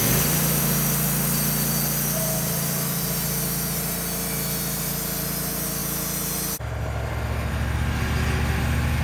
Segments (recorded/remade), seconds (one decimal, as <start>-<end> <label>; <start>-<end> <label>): 0.0-9.0 recorded